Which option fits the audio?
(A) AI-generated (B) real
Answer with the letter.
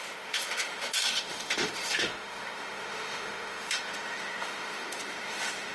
A